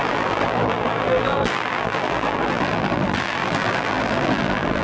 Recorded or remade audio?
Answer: remade